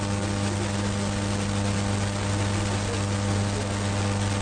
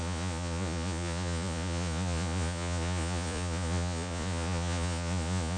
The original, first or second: first